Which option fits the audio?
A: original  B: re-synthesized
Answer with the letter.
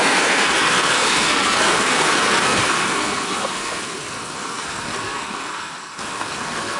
B